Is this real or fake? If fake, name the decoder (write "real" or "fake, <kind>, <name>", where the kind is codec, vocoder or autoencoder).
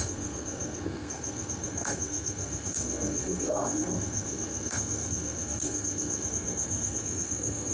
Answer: fake, codec, SNAC